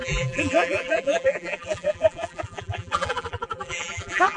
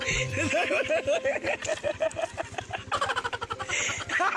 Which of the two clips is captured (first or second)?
second